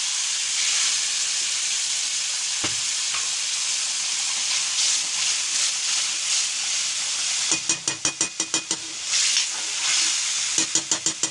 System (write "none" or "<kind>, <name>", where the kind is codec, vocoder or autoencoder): none